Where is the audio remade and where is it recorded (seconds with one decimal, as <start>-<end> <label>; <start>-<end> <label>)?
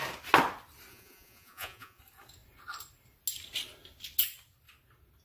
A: 0.0-0.9 recorded; 0.9-2.0 remade; 2.0-5.2 recorded